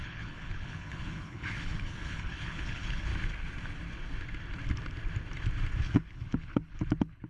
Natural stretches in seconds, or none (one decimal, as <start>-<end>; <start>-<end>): 3.1-5.8